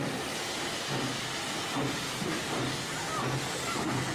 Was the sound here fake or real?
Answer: real